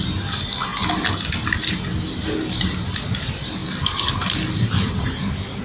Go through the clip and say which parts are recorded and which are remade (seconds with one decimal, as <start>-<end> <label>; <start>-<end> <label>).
0.0-5.6 recorded